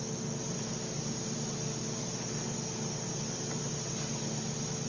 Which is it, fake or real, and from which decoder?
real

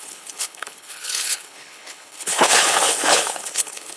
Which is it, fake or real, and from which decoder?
fake, codec, HILCodec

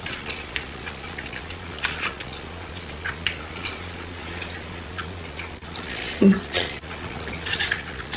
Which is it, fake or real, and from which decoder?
fake, vocoder, Vocos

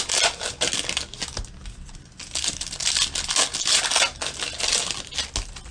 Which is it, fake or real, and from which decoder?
real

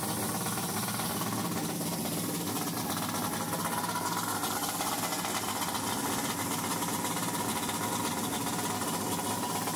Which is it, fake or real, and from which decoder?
real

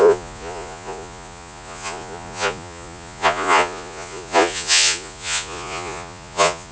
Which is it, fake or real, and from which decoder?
fake, vocoder, Vocos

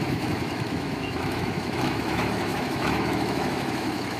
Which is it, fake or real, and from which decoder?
fake, autoencoder, DAC-VAE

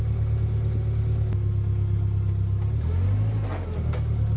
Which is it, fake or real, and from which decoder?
real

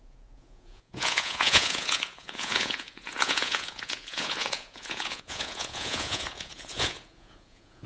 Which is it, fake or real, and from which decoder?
fake, vocoder, Vocos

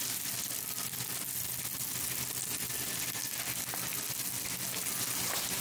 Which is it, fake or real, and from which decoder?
real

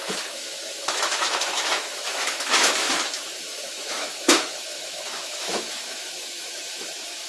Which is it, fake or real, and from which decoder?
fake, autoencoder, DAC-VAE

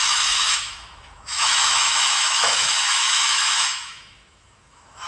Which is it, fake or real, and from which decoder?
fake, autoencoder, DAC-VAE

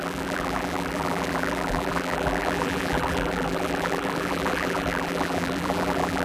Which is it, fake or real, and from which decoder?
fake, vocoder, BigVGAN v2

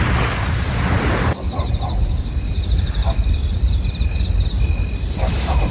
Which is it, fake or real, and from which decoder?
fake, vocoder, BigVGAN v2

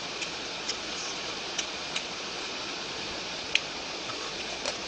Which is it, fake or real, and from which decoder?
fake, vocoder, Vocos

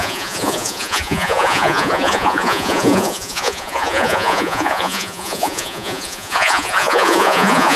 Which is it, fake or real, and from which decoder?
fake, vocoder, Vocos